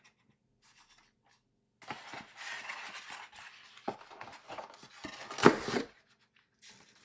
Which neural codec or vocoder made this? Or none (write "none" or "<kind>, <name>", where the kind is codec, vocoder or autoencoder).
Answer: none